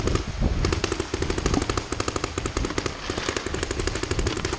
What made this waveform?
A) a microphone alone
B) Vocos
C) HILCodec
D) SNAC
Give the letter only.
A